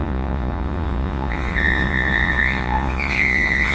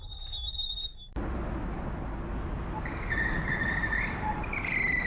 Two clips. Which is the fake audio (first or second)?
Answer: first